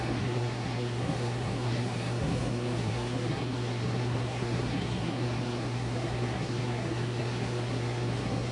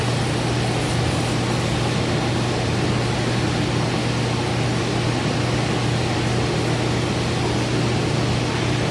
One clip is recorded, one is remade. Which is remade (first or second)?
first